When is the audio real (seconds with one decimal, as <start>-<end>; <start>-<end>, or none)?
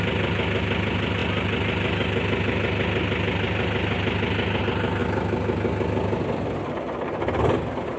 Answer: 0.0-8.0